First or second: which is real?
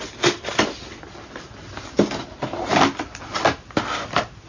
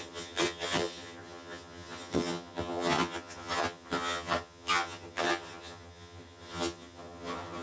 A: first